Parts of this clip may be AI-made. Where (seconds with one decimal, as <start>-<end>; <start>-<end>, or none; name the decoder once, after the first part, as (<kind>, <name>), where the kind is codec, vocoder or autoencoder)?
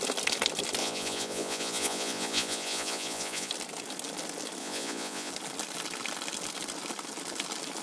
0.8-3.5 (vocoder, Vocos); 4.6-5.3